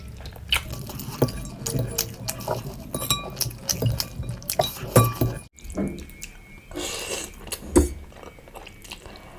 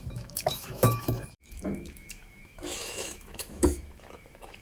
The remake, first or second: second